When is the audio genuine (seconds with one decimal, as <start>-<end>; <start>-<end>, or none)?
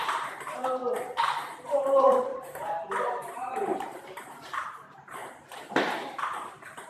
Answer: 0.8-1.8; 5.2-6.4